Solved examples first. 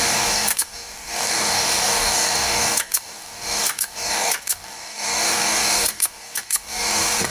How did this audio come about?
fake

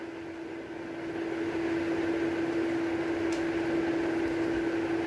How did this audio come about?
real